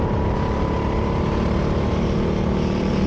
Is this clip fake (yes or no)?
no